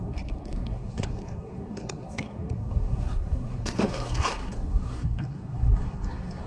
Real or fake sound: fake